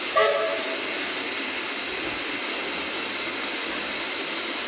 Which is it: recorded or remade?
recorded